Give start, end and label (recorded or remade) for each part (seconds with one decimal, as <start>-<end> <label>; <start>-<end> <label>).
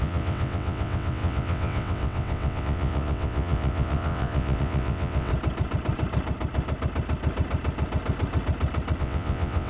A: 0.0-5.3 remade; 5.3-9.0 recorded; 9.0-9.7 remade